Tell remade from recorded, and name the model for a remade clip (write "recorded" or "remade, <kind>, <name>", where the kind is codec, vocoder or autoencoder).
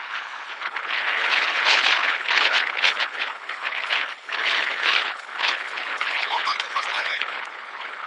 remade, codec, HILCodec